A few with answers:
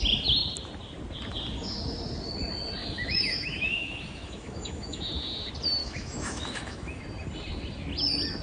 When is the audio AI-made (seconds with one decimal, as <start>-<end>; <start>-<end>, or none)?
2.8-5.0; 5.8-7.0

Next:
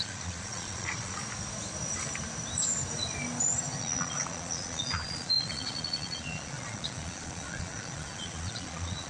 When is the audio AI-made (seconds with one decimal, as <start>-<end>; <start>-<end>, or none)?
0.0-1.2; 3.8-9.1

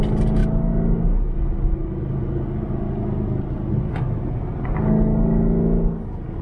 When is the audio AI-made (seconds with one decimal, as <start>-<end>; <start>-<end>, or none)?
none

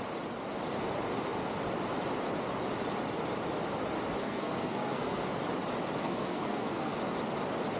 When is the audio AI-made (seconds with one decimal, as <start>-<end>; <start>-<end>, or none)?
4.2-5.3; 6.0-7.0

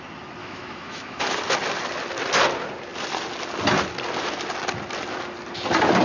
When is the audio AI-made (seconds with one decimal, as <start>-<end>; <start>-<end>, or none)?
0.4-1.2

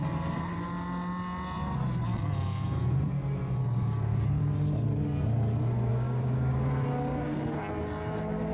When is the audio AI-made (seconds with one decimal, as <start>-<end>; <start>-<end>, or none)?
3.6-4.4; 5.9-6.7

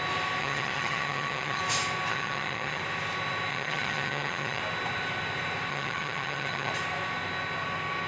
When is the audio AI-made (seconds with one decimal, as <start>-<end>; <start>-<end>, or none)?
0.4-1.6; 2.1-2.8; 3.5-4.6; 5.7-6.7